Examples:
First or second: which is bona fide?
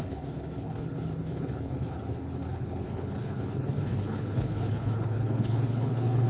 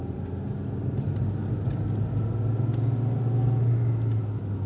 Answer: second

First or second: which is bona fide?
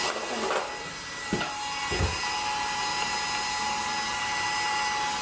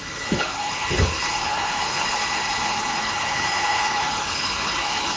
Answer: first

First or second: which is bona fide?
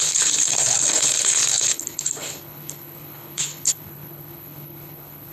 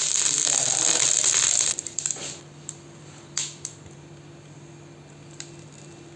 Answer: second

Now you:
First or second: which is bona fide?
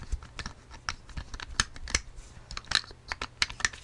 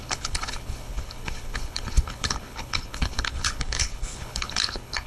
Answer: first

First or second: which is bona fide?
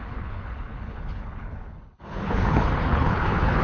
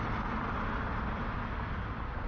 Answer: second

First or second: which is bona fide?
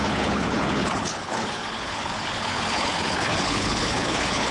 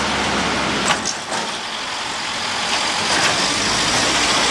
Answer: second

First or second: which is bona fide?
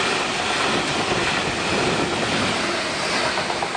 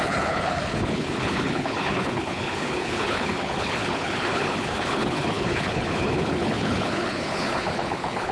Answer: first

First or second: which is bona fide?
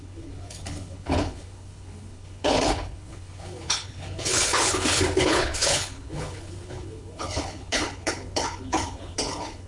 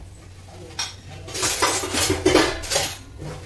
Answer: second